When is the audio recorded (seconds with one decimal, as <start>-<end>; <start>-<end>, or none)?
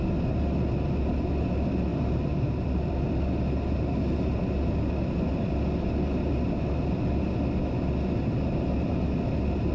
0.0-9.7